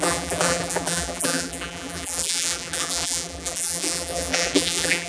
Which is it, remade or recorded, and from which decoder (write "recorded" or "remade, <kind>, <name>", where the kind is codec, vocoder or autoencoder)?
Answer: remade, vocoder, BigVGAN v2